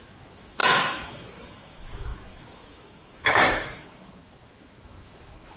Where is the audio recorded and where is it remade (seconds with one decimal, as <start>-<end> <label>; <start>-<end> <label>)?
0.0-5.6 remade